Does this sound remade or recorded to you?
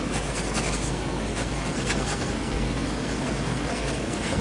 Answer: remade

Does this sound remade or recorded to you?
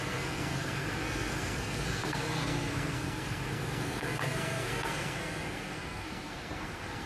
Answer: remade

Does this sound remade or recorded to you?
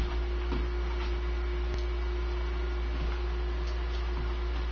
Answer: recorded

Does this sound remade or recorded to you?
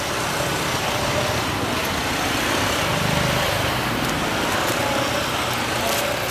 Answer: recorded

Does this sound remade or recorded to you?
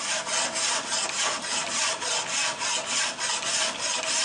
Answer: recorded